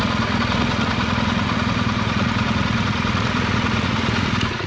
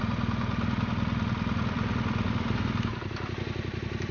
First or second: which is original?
second